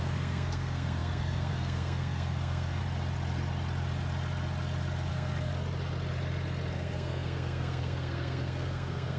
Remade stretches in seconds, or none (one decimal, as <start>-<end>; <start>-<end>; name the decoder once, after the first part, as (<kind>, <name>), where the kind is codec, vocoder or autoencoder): 0.0-2.8 (codec, SNAC); 5.1-5.5; 6.7-9.2